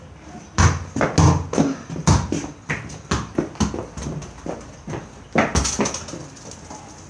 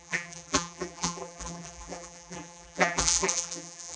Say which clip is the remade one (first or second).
second